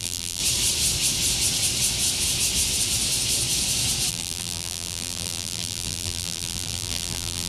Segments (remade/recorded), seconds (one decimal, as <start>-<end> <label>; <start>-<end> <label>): 0.0-0.4 remade; 0.4-4.1 recorded; 4.1-7.5 remade